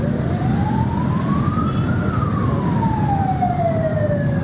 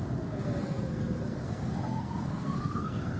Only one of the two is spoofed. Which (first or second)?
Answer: second